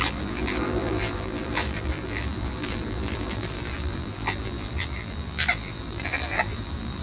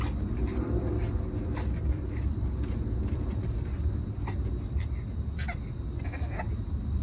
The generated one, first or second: first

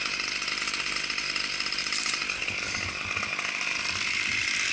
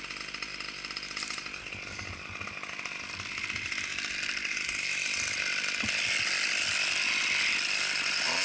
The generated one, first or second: first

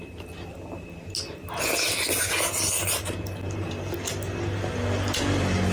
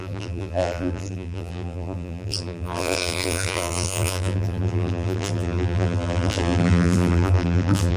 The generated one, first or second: second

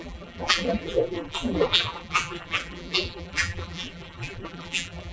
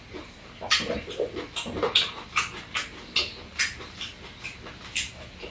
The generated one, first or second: first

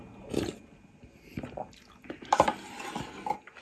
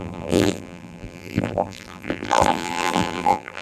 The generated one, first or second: second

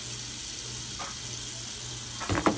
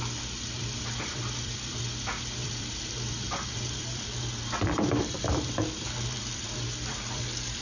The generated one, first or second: second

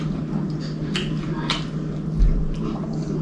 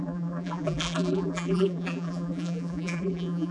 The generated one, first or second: second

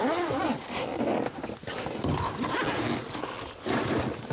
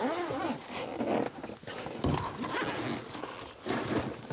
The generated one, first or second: first